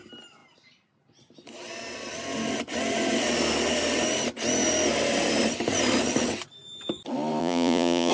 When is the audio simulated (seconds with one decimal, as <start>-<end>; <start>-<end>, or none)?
7.4-8.1